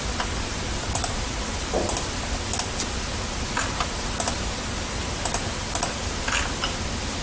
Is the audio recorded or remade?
recorded